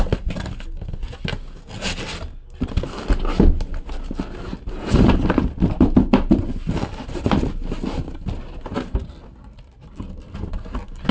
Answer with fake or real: real